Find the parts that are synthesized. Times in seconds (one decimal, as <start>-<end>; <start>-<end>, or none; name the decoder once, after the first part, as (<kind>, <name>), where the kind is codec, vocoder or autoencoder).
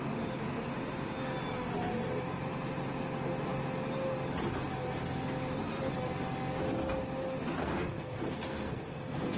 7.6-9.4 (codec, SNAC)